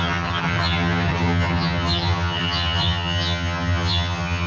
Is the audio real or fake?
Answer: fake